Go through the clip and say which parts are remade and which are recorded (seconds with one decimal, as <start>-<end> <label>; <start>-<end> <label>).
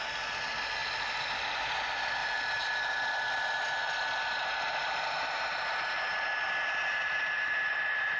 0.0-2.2 recorded; 2.2-2.7 remade; 2.7-4.4 recorded; 4.4-6.3 remade; 6.3-8.2 recorded